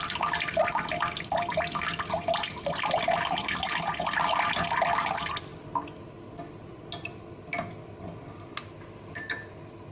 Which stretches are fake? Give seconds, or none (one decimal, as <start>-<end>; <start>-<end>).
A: none

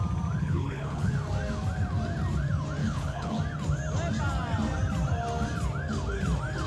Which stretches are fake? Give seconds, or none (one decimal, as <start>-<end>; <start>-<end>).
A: 0.4-1.1; 2.8-3.4